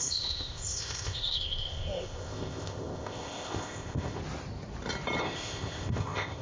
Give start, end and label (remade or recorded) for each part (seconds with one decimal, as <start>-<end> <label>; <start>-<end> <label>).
0.0-4.2 remade; 4.2-5.2 recorded; 5.2-6.4 remade